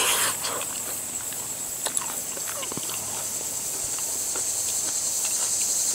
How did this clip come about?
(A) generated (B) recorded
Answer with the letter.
B